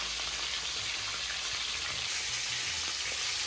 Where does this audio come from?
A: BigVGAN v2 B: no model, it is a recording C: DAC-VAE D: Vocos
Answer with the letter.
B